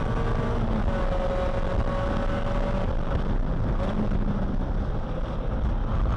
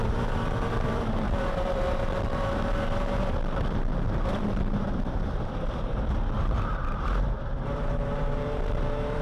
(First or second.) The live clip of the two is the first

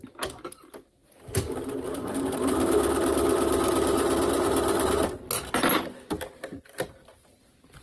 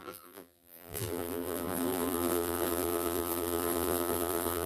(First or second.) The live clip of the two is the first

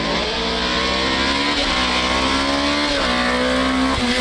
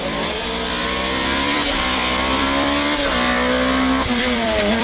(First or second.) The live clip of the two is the first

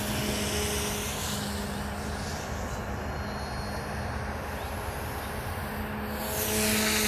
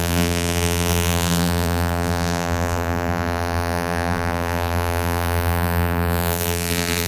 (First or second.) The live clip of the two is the first